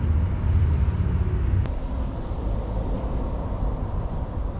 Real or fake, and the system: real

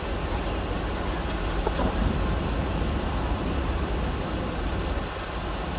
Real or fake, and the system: real